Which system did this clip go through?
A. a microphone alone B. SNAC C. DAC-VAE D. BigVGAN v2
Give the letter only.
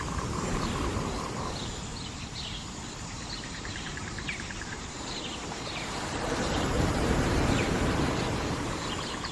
D